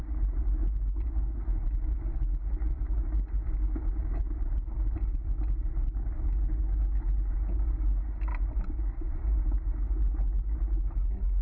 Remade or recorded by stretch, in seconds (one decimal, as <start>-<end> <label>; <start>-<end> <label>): 0.0-11.4 recorded